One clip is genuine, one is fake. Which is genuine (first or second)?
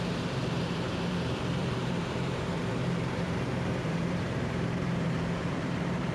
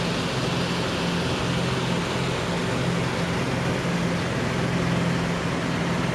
second